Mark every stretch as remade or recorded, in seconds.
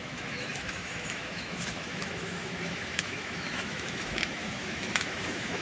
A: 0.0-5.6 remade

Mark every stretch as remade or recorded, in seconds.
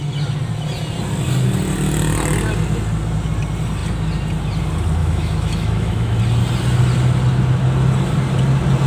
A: 0.0-5.0 recorded; 5.0-6.2 remade; 6.2-8.9 recorded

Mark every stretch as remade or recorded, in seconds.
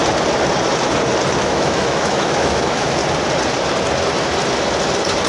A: 0.0-1.4 recorded; 1.4-3.0 remade; 3.0-5.3 recorded